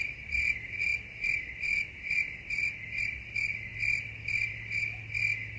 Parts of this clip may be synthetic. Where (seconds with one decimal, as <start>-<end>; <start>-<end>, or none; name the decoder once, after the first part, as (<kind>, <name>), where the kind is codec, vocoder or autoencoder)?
3.7-4.4 (vocoder, BigVGAN v2)